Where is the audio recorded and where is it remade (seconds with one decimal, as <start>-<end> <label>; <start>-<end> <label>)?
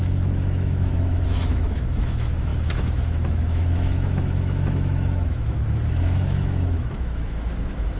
0.0-8.0 remade